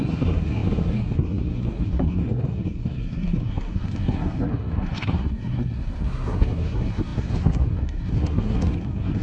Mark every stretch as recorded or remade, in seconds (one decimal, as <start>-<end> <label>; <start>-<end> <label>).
0.0-9.2 remade